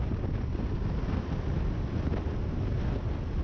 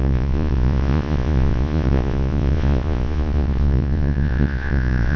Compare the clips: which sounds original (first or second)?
first